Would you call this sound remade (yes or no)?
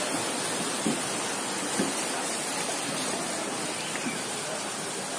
no